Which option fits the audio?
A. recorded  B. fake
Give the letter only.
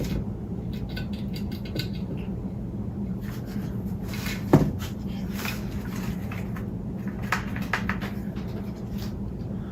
A